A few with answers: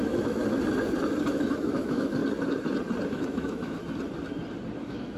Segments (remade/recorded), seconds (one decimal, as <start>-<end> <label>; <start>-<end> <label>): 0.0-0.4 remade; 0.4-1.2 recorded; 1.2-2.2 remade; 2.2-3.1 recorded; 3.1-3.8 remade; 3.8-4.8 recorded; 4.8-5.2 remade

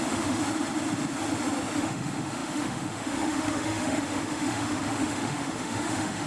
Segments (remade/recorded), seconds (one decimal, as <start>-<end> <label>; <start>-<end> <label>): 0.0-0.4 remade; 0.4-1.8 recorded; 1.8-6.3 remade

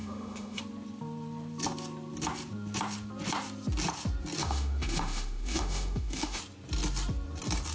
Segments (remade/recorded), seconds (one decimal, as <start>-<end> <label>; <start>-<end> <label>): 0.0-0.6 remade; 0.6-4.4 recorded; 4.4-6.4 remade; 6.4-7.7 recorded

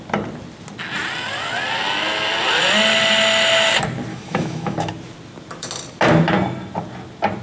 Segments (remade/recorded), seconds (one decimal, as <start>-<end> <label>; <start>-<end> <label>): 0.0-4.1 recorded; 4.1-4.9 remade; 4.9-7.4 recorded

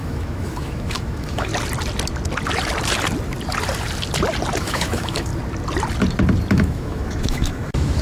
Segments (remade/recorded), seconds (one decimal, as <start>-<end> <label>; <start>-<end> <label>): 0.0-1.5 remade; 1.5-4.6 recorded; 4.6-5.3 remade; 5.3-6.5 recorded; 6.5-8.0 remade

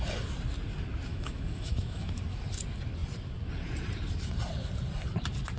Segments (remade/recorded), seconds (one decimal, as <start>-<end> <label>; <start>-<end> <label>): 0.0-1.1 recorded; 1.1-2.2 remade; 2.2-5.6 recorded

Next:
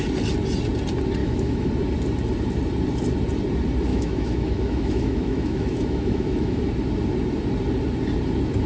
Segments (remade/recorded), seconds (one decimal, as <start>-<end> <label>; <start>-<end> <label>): 0.0-1.2 recorded; 1.2-1.7 remade; 1.7-3.9 recorded; 3.9-6.6 remade; 6.6-8.7 recorded